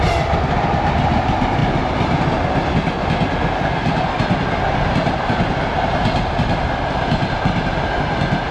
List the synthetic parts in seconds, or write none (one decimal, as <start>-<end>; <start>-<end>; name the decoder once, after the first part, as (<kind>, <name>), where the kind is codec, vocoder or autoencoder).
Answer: none

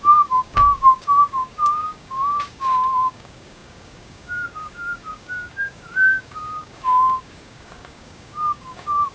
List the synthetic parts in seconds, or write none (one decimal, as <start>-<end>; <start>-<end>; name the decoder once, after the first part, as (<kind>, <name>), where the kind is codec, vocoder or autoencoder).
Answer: 0.0-9.1 (codec, DAC)

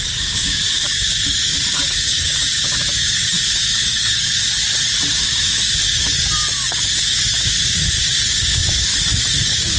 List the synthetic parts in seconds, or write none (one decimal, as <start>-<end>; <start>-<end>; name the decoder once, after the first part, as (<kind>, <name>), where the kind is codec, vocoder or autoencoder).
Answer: 0.0-4.4 (codec, DAC); 5.1-8.9; 9.4-9.8

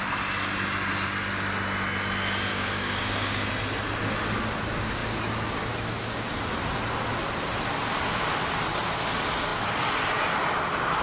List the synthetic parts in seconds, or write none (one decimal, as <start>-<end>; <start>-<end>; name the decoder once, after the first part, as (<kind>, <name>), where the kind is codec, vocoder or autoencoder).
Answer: 2.5-3.5 (codec, DAC)